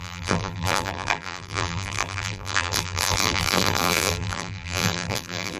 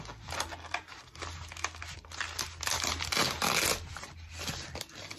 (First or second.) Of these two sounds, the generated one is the first